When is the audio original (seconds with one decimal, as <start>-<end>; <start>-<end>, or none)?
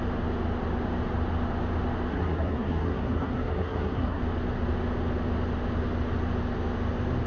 0.0-2.1; 4.2-7.3